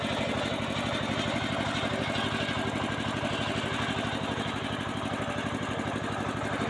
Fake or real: real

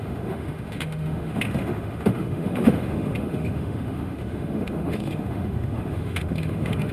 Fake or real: fake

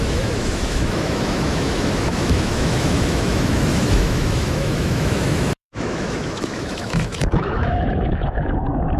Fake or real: fake